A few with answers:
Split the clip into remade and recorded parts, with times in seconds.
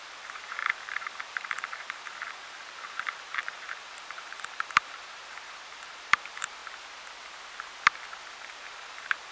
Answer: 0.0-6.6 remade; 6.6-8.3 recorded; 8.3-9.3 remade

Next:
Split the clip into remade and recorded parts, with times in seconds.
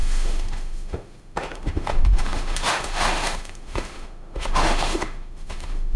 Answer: 0.0-6.0 remade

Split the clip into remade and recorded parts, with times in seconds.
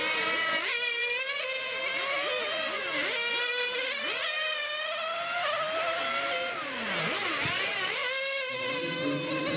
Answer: 0.0-9.6 recorded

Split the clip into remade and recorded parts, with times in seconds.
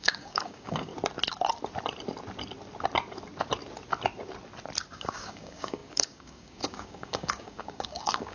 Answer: 0.0-0.9 remade; 0.9-4.9 recorded; 4.9-8.3 remade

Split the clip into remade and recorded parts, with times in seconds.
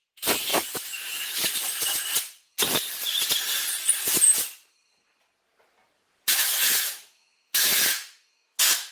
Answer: 0.0-0.5 recorded; 0.5-1.5 remade; 1.5-6.4 recorded; 6.4-8.9 remade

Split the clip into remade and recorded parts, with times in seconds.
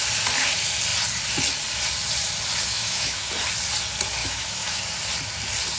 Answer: 0.0-2.7 recorded; 2.7-3.3 remade; 3.3-4.2 recorded; 4.2-4.8 remade; 4.8-5.8 recorded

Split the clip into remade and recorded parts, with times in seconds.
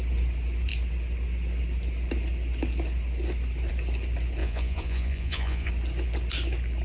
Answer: 0.0-4.4 recorded; 4.4-5.7 remade; 5.7-6.8 recorded